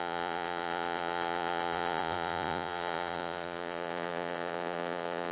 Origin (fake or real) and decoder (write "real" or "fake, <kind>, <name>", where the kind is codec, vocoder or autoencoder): fake, vocoder, Vocos